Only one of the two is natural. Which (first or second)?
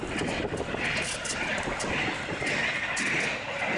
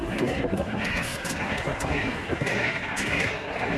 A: first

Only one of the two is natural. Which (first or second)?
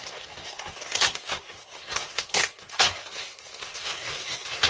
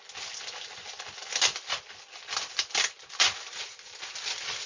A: second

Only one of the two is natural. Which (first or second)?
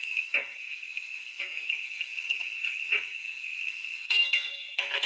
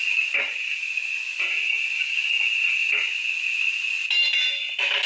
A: second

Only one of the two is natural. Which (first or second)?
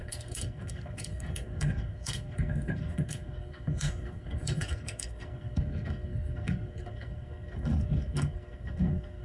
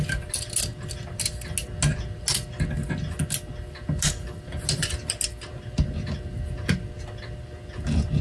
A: second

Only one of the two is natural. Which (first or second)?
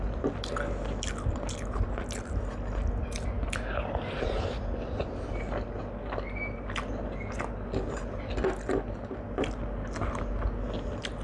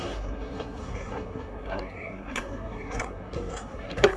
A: first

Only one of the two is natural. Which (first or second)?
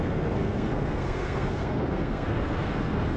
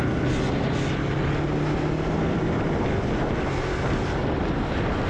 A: second